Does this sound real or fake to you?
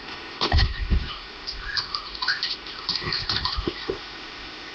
fake